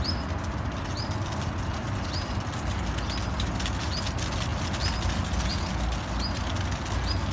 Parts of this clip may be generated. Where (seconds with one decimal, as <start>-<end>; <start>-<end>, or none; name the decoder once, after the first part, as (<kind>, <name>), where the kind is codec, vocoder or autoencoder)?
none